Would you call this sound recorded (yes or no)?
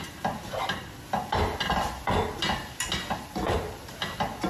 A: yes